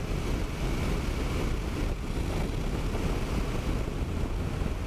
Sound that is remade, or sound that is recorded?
recorded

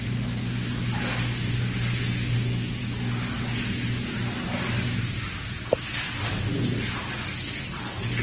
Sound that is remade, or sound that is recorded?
recorded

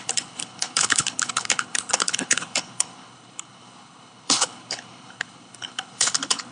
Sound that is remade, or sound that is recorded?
remade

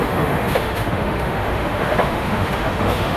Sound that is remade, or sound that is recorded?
remade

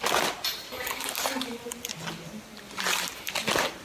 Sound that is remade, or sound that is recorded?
recorded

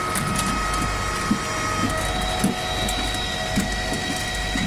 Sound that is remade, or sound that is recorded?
recorded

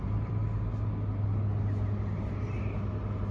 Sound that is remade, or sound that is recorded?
recorded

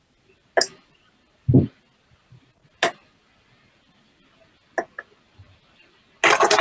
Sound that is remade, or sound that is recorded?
recorded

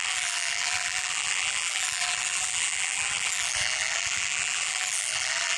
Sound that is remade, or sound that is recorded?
remade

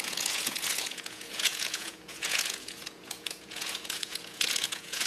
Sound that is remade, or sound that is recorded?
remade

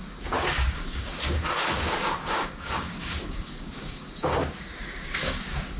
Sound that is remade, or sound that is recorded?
remade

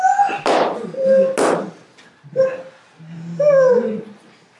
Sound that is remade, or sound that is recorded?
recorded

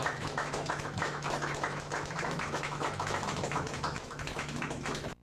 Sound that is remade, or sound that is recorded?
remade